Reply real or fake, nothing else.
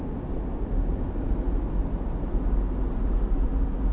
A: real